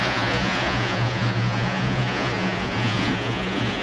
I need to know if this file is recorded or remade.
remade